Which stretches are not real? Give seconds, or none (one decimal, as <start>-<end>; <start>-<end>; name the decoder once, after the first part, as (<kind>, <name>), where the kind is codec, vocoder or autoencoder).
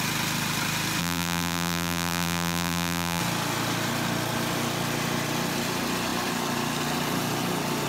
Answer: 1.0-3.2 (vocoder, BigVGAN v2)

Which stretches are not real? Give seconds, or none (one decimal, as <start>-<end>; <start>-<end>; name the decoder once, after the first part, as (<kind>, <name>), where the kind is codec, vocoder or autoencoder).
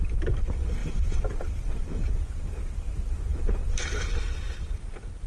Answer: 0.8-4.0 (vocoder, BigVGAN v2)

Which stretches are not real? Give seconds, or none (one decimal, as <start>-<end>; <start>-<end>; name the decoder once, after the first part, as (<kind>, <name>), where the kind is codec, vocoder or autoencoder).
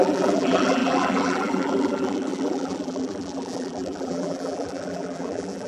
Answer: 0.0-5.7 (vocoder, BigVGAN v2)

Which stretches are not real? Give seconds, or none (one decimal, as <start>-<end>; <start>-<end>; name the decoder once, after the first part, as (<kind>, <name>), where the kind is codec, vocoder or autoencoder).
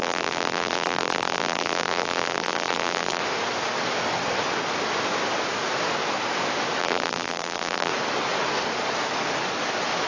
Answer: 0.0-3.2 (vocoder, BigVGAN v2); 6.8-7.9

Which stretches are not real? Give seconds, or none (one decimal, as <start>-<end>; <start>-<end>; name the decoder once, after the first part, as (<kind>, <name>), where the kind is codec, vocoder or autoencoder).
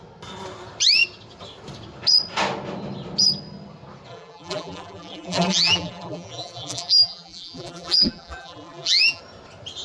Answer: 4.1-9.2 (vocoder, BigVGAN v2)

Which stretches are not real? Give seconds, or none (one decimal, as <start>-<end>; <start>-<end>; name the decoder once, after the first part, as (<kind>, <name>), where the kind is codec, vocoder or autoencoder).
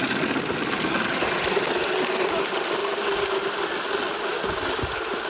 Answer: 2.8-3.5 (vocoder, BigVGAN v2)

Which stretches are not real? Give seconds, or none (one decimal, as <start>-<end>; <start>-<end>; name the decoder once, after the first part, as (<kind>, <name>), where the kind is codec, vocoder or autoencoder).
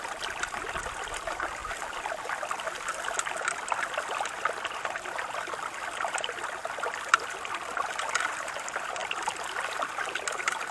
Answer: none